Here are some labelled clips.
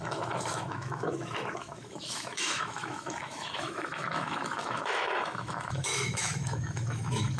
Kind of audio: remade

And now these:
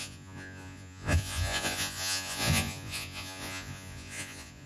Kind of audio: remade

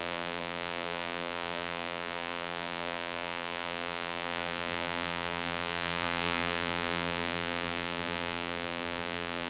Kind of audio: remade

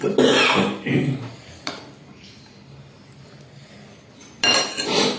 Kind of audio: recorded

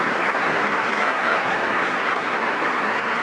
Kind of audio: remade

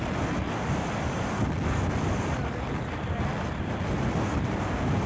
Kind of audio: recorded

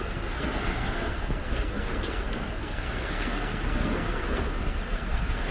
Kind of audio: remade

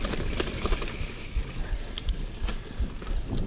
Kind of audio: recorded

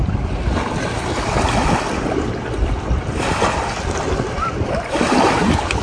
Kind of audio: recorded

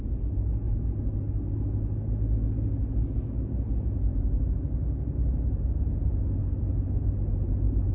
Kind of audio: recorded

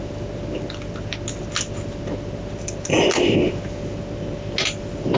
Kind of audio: recorded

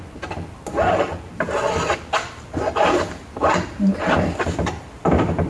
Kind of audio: recorded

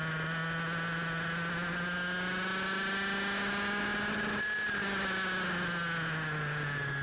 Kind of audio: recorded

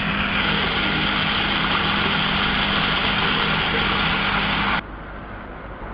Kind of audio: recorded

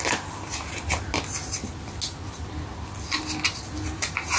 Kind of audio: recorded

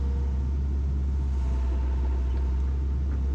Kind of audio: recorded